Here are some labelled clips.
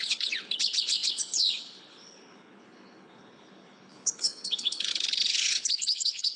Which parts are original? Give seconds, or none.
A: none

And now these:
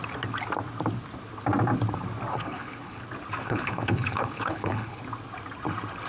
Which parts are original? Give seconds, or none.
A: 0.0-2.3; 3.0-3.4; 5.0-6.1

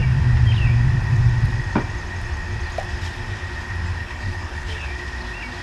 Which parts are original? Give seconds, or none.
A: 0.0-4.0; 4.9-5.6

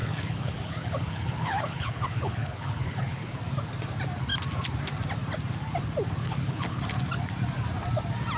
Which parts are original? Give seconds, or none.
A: 3.4-6.2; 6.8-8.4